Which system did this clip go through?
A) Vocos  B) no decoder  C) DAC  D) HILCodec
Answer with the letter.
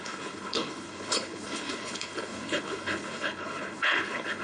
D